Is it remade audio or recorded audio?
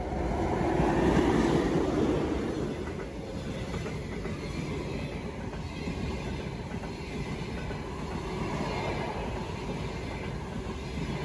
recorded